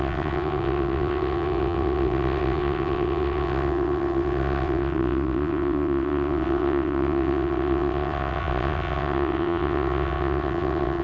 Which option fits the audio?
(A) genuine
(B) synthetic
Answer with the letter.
B